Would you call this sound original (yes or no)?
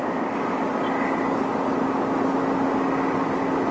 yes